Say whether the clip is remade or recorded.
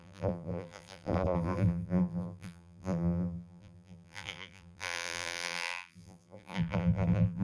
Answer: remade